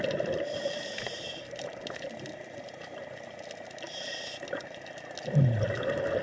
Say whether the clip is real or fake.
real